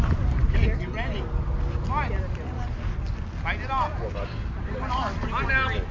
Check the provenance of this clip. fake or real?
real